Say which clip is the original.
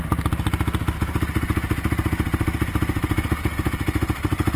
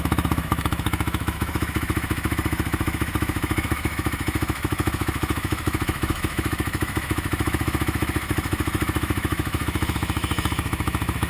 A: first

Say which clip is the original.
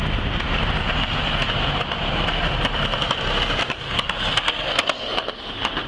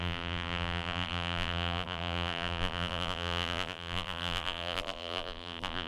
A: first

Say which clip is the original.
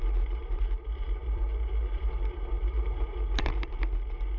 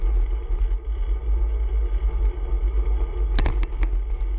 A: second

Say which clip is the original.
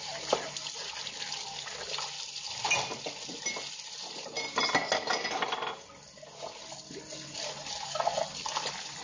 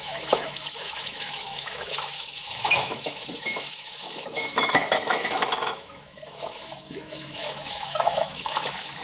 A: first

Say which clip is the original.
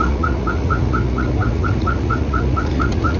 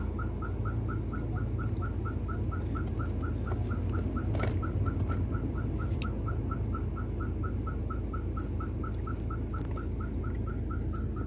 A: second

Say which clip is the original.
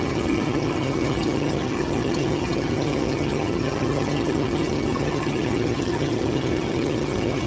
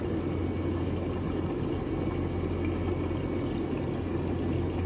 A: second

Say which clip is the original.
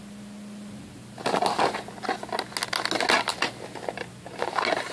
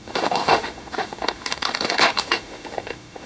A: first